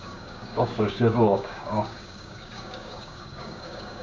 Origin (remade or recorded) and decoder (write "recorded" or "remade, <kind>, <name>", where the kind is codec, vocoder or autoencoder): remade, codec, DAC